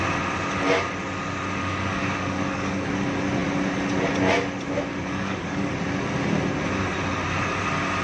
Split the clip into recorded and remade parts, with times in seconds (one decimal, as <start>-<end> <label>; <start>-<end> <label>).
0.0-1.6 recorded; 1.6-2.9 remade; 2.9-4.9 recorded; 4.9-5.7 remade; 5.7-8.0 recorded